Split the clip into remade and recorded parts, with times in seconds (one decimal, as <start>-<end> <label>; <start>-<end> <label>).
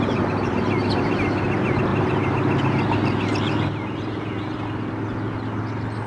0.0-6.1 recorded